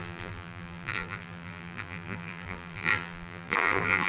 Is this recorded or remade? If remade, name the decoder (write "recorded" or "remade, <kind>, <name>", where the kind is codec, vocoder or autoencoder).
remade, vocoder, BigVGAN v2